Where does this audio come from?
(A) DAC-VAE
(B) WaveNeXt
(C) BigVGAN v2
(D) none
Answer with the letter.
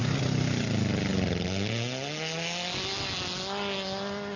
D